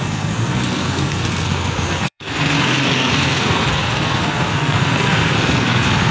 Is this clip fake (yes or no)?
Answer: yes